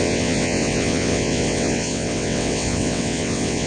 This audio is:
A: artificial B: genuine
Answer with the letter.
A